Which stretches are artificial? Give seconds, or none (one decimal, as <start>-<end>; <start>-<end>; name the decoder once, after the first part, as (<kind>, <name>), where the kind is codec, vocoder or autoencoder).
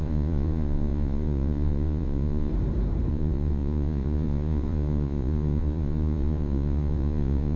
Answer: 0.0-2.5 (vocoder, Vocos); 3.1-7.6